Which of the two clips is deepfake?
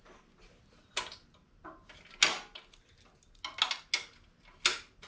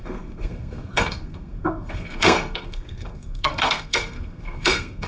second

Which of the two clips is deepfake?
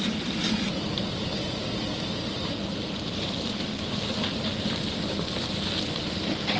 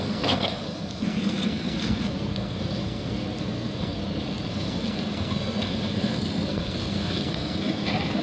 second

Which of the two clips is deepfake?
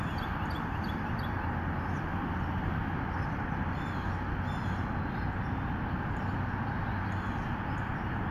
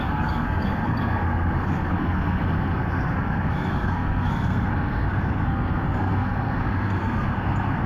second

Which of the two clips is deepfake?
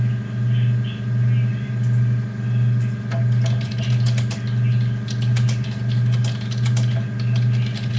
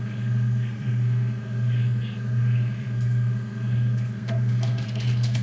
second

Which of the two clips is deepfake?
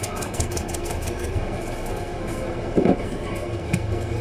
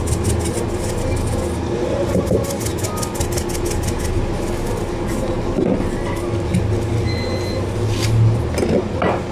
first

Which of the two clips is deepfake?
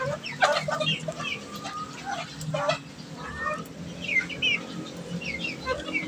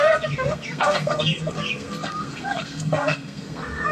second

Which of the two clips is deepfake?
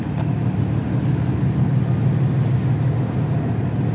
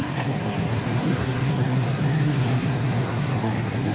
second